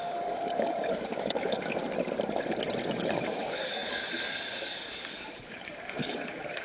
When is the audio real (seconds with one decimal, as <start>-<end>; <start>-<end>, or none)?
1.8-3.2